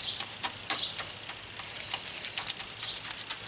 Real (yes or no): yes